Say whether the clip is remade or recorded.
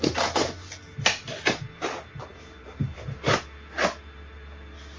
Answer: recorded